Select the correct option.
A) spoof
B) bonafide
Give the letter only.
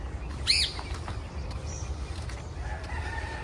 B